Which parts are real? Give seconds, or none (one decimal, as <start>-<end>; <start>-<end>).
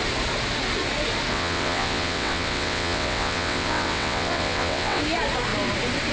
0.0-1.3; 5.0-6.1